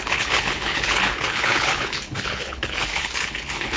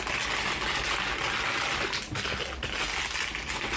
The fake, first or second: first